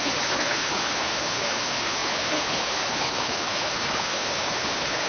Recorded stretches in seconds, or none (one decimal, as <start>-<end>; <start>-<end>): none